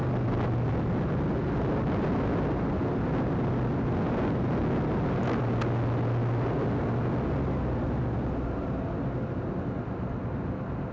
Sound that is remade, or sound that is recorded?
recorded